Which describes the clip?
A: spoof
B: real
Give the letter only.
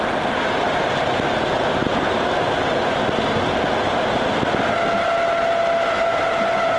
B